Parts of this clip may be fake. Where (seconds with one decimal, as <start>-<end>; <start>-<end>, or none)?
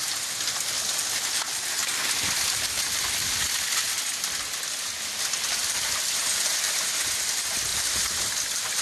5.6-7.2; 7.7-8.3